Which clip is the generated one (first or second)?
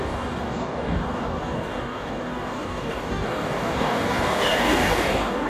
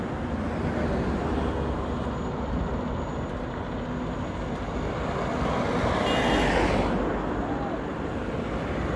first